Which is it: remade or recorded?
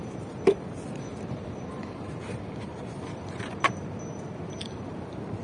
recorded